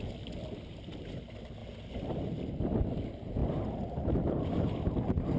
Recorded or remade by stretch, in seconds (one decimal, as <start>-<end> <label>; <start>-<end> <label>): 0.0-5.4 recorded